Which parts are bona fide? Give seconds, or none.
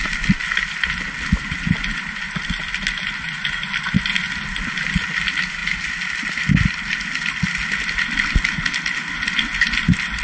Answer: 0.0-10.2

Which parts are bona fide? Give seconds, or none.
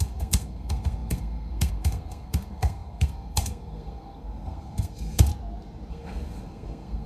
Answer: 5.3-5.9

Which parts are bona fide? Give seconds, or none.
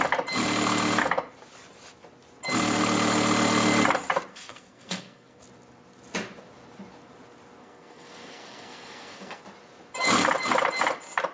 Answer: 0.0-4.3; 5.4-7.6; 9.4-11.3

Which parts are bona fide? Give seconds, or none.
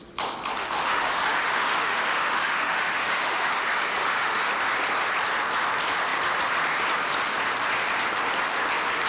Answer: 0.0-0.6; 3.5-4.0; 4.5-9.1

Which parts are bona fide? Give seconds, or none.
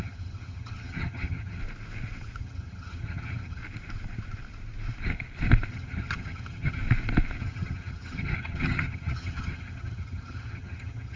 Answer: 1.6-2.4; 3.6-5.7; 6.8-7.4